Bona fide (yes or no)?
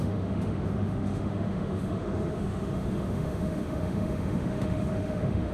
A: no